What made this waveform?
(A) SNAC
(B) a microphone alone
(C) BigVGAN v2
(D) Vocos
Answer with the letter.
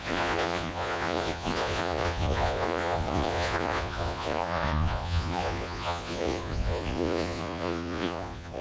D